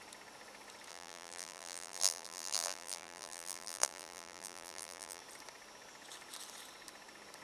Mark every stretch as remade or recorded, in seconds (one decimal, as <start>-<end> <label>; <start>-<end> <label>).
0.0-0.9 recorded; 0.9-5.2 remade; 5.2-7.4 recorded